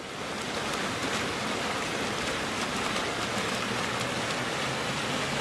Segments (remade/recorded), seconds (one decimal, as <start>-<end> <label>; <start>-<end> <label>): 0.0-1.0 recorded; 1.0-2.7 remade; 2.7-5.4 recorded